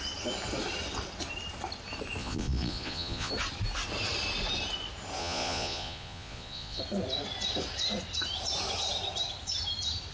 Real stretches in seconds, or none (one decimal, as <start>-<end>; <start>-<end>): 0.0-2.2; 3.3-5.2; 6.8-10.1

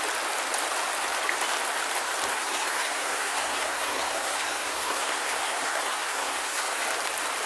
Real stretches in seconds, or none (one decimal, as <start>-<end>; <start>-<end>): 0.0-2.3; 6.8-7.5

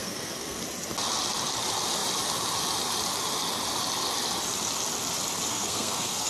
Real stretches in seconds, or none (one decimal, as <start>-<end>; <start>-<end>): 0.6-5.5

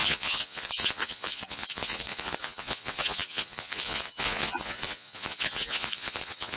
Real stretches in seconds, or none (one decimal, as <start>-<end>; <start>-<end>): none